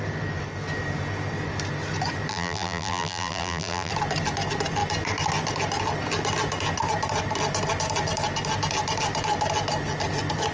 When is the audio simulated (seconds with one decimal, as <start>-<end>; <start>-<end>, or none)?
2.3-3.9